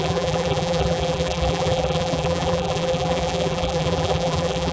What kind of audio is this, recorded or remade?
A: remade